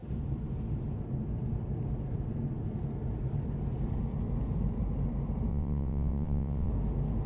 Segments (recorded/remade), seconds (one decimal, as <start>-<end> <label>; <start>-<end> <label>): 0.0-5.5 recorded; 5.5-6.7 remade; 6.7-7.3 recorded